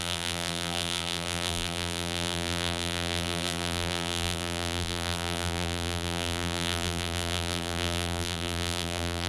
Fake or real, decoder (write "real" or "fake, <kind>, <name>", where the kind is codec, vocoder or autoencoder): fake, vocoder, BigVGAN v2